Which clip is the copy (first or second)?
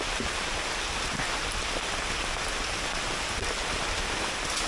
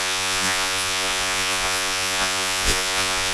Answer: second